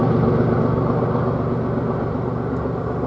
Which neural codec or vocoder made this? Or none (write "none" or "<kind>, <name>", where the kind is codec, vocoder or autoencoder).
none